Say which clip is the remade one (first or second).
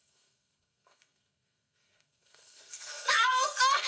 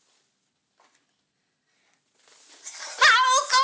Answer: first